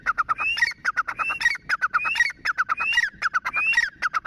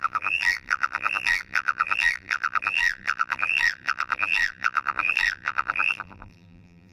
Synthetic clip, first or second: second